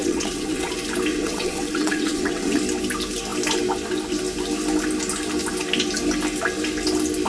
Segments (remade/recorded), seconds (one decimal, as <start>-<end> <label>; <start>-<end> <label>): 0.0-0.7 remade; 0.7-1.1 recorded; 1.1-2.6 remade; 2.6-7.3 recorded